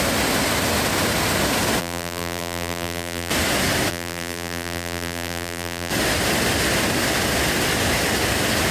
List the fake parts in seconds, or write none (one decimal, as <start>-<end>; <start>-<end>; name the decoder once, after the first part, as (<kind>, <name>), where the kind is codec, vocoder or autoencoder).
1.8-3.3 (vocoder, BigVGAN v2); 3.9-5.9